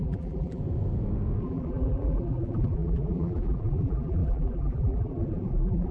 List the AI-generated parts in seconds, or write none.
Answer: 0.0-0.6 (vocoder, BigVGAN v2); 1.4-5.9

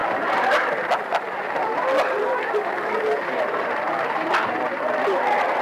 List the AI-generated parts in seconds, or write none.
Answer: none